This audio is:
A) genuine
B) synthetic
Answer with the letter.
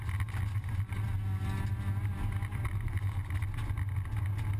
A